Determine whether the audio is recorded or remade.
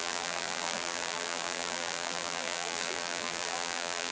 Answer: remade